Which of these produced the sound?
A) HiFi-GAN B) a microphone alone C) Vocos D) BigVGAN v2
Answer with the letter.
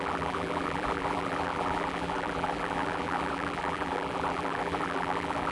D